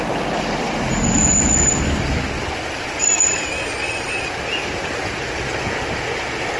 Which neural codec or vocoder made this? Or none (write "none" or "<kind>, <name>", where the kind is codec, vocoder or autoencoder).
none